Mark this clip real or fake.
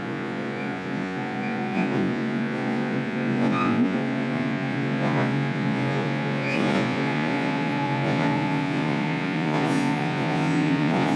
fake